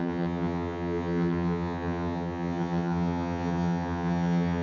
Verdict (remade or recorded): remade